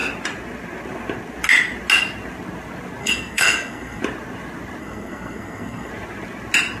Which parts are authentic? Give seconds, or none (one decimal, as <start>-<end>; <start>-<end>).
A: 0.0-3.0; 4.0-4.8; 5.9-6.8